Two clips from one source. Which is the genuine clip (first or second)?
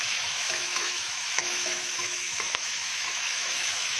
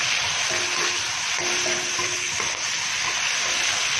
second